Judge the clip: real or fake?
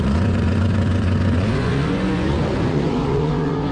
fake